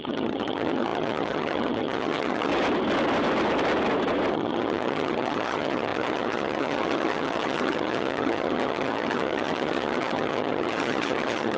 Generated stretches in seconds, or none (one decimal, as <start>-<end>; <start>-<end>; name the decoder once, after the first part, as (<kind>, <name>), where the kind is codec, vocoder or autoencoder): 0.0-2.5 (vocoder, HiFi-GAN); 4.3-11.6